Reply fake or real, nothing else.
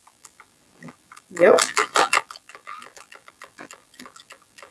fake